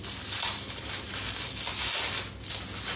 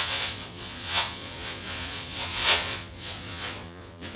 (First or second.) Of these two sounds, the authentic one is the first